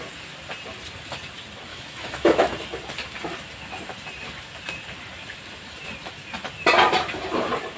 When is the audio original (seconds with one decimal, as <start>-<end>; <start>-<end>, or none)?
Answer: 0.0-1.7; 2.5-7.8